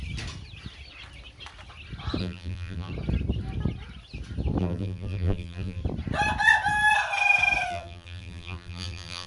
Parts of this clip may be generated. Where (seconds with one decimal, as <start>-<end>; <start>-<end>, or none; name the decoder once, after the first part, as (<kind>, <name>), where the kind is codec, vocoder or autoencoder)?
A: 2.2-2.9 (vocoder, BigVGAN v2); 4.6-5.8; 7.7-9.3

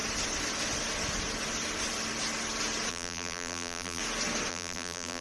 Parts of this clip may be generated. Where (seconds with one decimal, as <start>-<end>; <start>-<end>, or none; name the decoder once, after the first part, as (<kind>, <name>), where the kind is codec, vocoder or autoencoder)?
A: 2.9-4.0 (vocoder, BigVGAN v2); 4.5-5.2

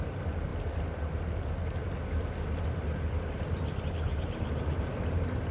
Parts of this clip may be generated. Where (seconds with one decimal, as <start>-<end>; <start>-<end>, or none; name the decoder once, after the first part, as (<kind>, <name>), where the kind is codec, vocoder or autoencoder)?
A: 0.0-0.5 (vocoder, BigVGAN v2); 3.8-5.5

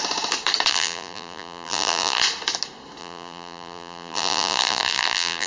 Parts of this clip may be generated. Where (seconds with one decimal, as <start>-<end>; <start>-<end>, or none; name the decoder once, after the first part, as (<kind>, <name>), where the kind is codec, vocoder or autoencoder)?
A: 0.7-2.2 (vocoder, BigVGAN v2); 3.0-5.5